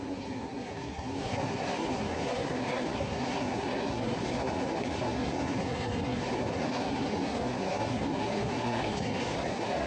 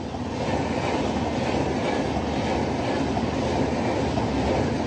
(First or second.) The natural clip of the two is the second